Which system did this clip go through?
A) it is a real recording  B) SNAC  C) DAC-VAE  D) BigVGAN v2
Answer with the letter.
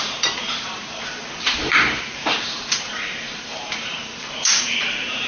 D